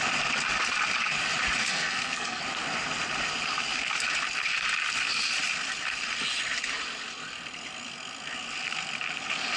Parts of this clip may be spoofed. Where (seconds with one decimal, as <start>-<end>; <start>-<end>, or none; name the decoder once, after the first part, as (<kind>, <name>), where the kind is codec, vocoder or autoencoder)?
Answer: 1.6-2.4 (codec, SNAC)

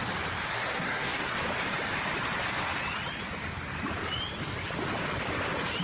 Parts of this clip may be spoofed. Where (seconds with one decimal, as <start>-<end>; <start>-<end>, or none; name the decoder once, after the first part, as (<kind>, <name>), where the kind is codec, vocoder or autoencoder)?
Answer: 0.5-1.4 (codec, SNAC)

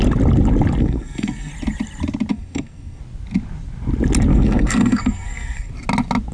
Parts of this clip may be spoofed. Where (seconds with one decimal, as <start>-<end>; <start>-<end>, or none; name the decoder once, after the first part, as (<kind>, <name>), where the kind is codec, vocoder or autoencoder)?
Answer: 0.8-1.5 (codec, SNAC); 2.3-3.0; 4.3-5.7

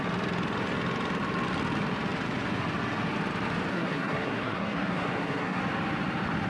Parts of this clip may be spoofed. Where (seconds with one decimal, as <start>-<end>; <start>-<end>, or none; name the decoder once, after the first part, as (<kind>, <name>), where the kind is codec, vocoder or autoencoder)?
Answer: 3.7-5.6 (codec, SNAC)

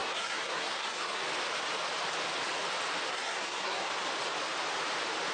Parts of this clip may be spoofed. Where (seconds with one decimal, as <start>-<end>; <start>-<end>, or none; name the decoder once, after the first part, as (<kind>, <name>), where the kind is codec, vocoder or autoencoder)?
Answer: 0.0-1.2 (codec, SNAC); 3.1-3.9

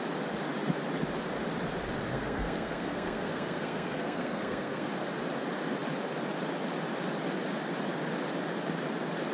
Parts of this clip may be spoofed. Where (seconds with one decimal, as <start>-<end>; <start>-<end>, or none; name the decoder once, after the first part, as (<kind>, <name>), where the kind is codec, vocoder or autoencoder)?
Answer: 2.1-4.9 (codec, SNAC)

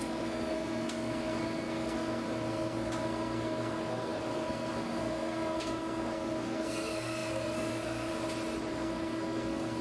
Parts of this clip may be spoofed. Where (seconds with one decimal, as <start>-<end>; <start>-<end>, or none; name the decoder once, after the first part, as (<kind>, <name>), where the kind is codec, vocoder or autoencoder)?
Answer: 0.0-8.1 (codec, SNAC); 8.7-9.8

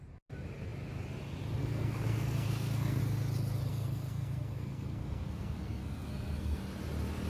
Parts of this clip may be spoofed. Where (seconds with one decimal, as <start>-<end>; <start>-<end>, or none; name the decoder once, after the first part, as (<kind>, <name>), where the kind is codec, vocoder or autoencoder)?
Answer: 1.6-3.0 (codec, SNAC); 3.7-6.6